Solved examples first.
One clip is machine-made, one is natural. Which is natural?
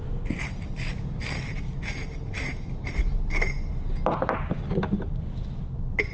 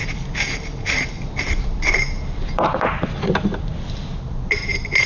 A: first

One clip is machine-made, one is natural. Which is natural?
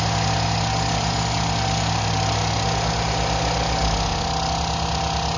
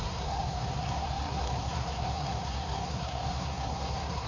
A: first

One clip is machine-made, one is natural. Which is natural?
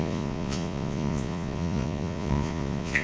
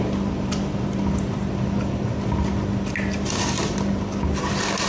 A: second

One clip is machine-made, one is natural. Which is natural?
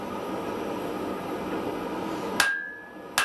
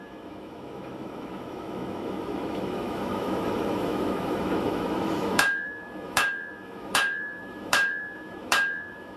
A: first